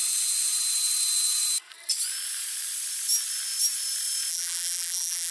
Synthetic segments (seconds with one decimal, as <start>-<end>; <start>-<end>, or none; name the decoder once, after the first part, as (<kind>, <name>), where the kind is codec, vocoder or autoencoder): 4.3-5.3 (vocoder, BigVGAN v2)